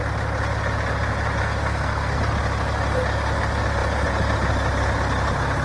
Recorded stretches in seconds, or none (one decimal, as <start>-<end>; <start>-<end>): 0.0-1.4; 2.2-5.6

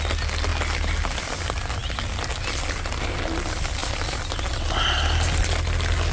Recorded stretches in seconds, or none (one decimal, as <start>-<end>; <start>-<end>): 0.0-6.1

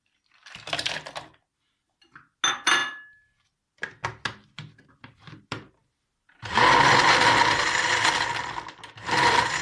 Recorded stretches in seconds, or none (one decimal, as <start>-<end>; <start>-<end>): 0.0-9.6

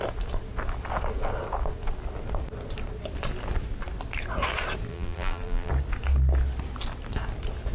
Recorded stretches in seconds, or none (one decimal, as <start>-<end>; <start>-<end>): 0.0-4.9; 5.7-7.7

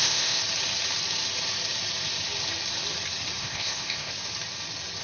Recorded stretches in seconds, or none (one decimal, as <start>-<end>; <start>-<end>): 0.4-3.4; 4.1-5.0

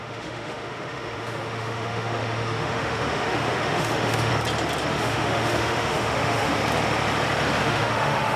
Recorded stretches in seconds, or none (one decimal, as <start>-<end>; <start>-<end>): 4.3-4.9; 6.6-7.6